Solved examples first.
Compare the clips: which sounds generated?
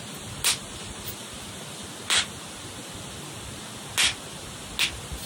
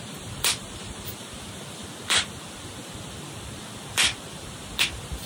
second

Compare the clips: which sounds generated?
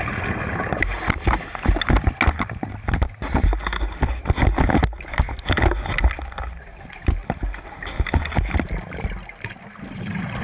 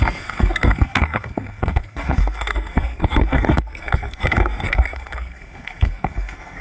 second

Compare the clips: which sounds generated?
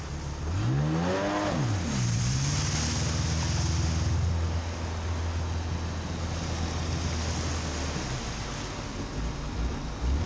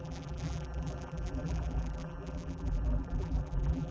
second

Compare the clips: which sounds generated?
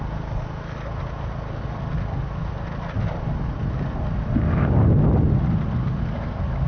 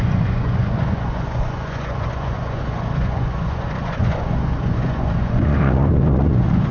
second